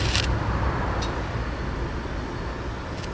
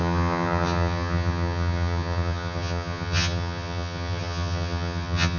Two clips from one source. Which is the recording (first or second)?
first